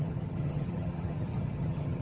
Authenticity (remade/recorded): remade